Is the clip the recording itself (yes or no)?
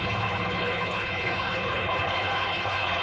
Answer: no